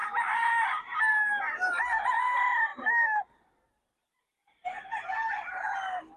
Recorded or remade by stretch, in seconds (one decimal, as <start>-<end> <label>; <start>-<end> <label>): 0.0-1.1 remade; 1.1-2.7 recorded; 2.7-3.7 remade; 3.7-4.4 recorded; 4.4-5.1 remade; 5.1-6.2 recorded

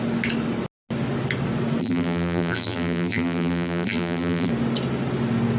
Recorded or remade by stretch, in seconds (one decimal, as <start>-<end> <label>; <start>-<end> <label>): 0.0-1.8 recorded; 1.8-4.5 remade; 4.5-5.6 recorded

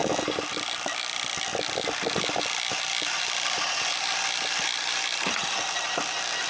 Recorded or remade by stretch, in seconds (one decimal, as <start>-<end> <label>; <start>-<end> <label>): 0.0-6.5 recorded